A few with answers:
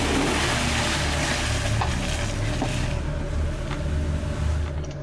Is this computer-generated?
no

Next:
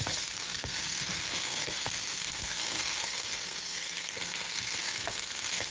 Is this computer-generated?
yes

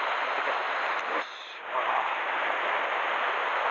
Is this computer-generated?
no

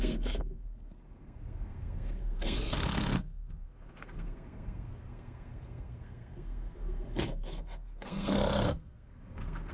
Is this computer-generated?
yes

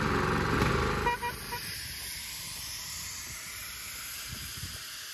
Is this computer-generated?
no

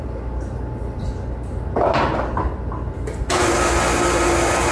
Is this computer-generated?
no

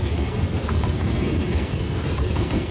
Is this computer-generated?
yes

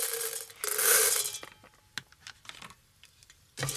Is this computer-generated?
no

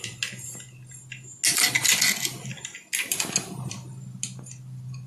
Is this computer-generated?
no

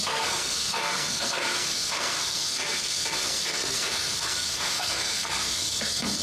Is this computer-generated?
yes